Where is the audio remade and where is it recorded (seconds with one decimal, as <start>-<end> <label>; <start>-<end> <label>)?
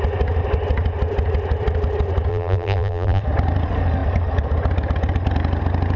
0.0-2.3 recorded; 2.3-3.2 remade; 3.2-6.0 recorded